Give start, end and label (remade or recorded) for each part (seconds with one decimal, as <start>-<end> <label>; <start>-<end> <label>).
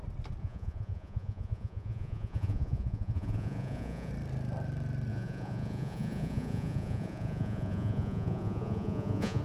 0.0-0.4 recorded; 0.4-4.1 remade; 4.1-5.1 recorded; 5.1-9.4 remade